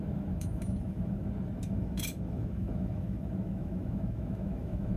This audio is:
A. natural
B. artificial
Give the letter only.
B